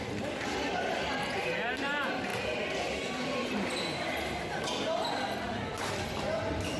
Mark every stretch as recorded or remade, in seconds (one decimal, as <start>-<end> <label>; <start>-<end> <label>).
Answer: 0.0-2.3 remade; 2.3-5.8 recorded; 5.8-6.8 remade